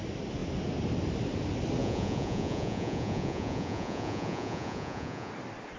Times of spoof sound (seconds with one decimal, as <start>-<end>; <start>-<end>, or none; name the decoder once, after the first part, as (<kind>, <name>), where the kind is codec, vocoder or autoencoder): 1.8-5.3 (vocoder, Vocos)